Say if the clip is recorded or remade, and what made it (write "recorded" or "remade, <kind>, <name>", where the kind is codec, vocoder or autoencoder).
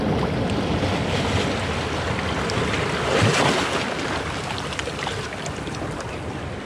recorded